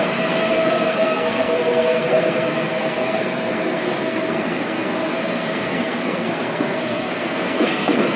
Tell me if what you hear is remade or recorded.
remade